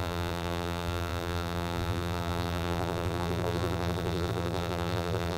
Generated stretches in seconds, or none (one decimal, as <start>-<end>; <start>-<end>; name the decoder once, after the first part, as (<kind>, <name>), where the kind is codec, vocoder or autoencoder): 0.0-5.4 (vocoder, BigVGAN v2)